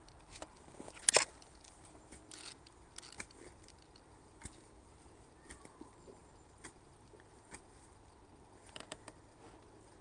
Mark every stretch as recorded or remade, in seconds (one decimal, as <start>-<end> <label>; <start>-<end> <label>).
0.0-10.0 recorded